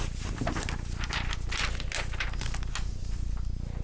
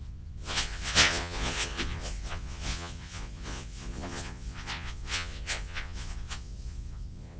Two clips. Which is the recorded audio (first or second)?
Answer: first